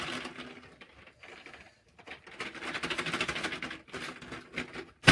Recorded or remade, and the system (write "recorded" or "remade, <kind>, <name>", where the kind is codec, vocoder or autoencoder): recorded